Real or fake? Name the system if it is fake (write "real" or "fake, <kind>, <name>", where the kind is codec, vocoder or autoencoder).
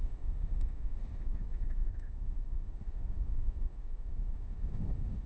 fake, autoencoder, DAC-VAE